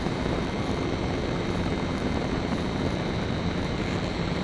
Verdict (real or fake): fake